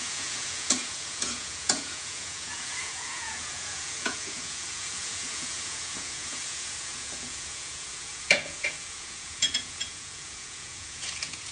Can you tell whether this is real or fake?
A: fake